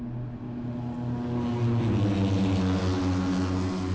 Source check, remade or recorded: recorded